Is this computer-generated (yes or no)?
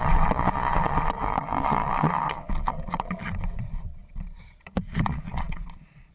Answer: yes